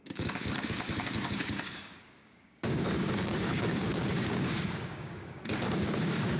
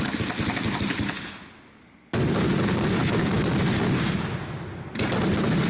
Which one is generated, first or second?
first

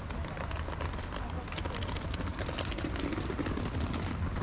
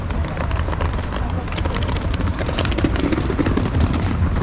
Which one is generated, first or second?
second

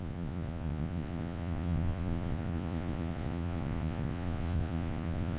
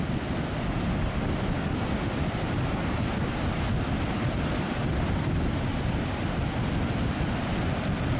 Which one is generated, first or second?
first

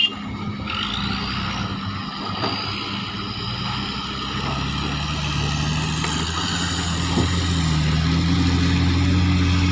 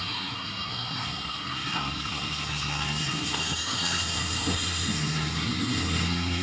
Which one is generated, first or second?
second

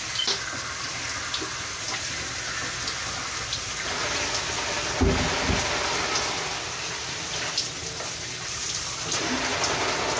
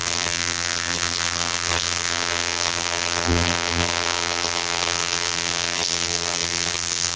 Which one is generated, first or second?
second